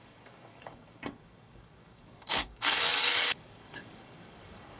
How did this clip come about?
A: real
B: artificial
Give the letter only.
B